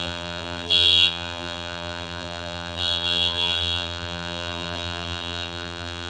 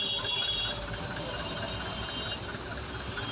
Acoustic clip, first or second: second